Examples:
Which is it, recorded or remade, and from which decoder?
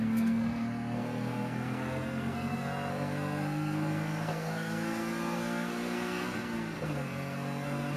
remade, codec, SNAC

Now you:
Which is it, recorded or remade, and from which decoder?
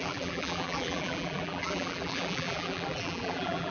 remade, vocoder, BigVGAN v2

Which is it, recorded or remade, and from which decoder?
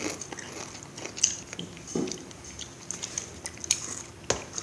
recorded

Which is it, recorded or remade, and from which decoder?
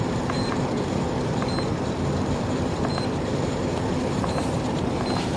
remade, vocoder, BigVGAN v2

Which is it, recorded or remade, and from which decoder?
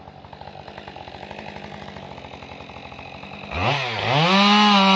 recorded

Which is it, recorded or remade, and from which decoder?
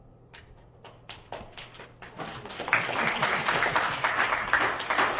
recorded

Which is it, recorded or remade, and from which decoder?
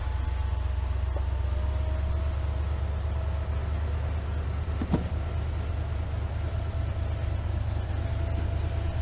recorded